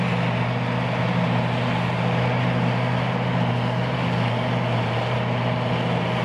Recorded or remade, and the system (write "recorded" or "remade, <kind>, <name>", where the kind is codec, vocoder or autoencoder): recorded